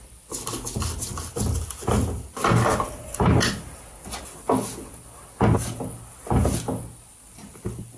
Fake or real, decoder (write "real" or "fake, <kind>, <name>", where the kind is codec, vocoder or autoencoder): real